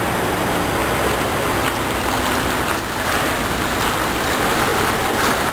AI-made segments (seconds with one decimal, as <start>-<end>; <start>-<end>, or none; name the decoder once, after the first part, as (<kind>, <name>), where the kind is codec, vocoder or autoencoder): none